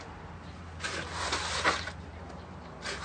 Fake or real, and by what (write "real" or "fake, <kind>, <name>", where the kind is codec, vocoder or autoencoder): real